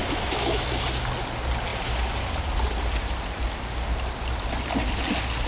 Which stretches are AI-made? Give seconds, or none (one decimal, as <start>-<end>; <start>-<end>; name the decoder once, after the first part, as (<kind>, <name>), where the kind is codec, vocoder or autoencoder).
0.0-0.8 (autoencoder, DAC-VAE)